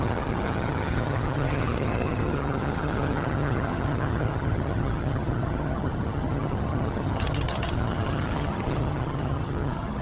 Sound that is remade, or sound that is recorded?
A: remade